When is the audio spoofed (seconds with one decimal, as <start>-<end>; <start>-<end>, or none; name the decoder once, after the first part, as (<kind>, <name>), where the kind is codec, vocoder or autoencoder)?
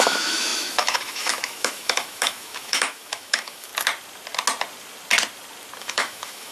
0.0-3.7 (autoencoder, DAC-VAE); 5.8-6.5